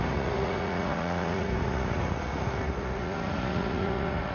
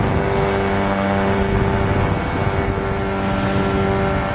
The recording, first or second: second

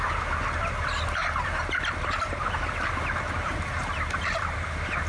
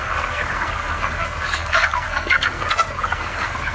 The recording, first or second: first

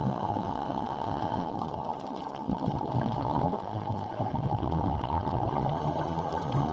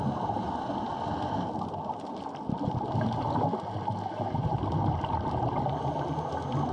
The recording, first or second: second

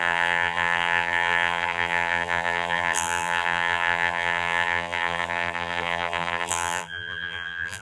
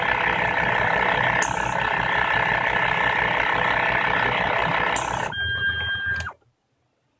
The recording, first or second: second